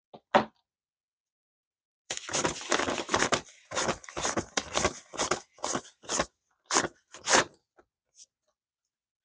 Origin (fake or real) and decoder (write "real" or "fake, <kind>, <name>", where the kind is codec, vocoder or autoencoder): real